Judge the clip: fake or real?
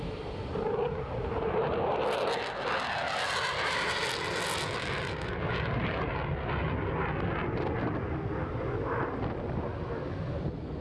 real